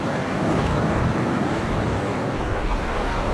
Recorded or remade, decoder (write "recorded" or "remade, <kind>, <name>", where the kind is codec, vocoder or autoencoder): remade, codec, DAC